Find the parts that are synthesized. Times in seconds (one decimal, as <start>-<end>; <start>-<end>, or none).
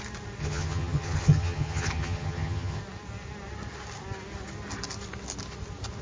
0.4-2.8